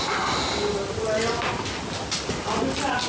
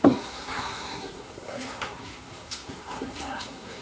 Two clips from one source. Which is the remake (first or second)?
second